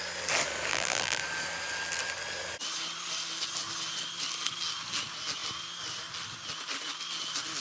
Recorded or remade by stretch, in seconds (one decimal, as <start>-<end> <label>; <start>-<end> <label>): 0.0-0.7 recorded; 0.7-1.2 remade; 1.2-7.6 recorded